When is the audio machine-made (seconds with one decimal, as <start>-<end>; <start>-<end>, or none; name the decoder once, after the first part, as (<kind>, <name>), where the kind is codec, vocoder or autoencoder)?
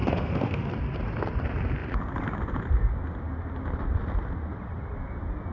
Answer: 0.0-0.7 (autoencoder, DAC-VAE)